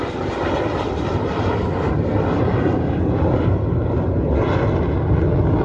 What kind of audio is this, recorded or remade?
recorded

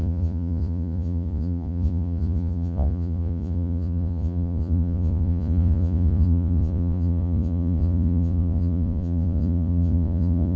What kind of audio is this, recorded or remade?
remade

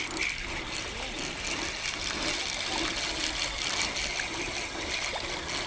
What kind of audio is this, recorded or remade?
recorded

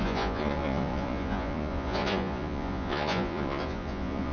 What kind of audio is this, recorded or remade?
remade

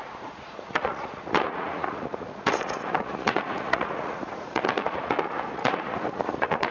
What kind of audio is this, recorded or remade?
remade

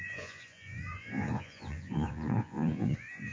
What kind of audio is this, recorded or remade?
remade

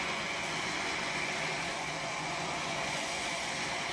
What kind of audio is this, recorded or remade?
remade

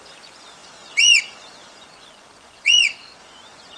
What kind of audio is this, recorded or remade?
remade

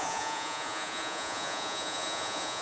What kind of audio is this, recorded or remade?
remade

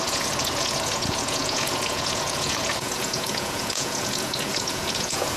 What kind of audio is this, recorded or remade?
remade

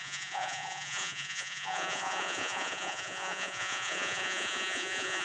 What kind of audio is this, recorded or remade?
remade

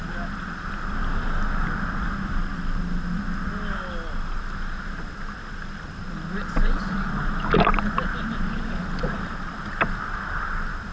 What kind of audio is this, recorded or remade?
recorded